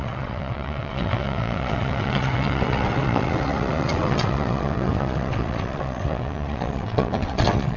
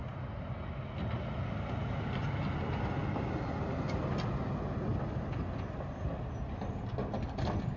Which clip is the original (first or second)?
second